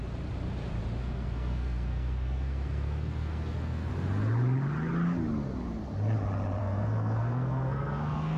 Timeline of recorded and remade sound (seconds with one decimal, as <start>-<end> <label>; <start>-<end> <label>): 0.0-1.0 recorded; 1.0-3.9 remade; 3.9-6.6 recorded; 6.6-8.4 remade